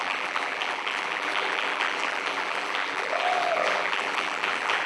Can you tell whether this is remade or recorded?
remade